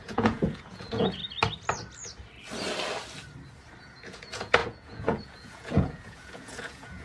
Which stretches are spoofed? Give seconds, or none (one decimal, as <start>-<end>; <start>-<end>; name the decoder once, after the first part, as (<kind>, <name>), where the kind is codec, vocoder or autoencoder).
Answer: 0.0-1.2 (vocoder, Vocos); 3.8-7.0